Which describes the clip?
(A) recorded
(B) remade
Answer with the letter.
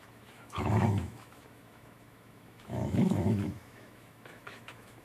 B